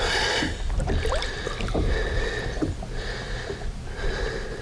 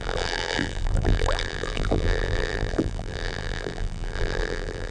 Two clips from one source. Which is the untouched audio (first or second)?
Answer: first